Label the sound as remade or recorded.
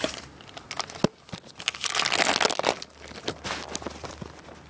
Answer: recorded